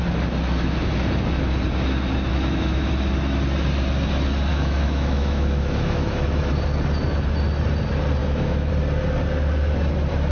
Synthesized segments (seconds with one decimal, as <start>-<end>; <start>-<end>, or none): 2.3-2.9; 4.5-6.5; 8.2-8.7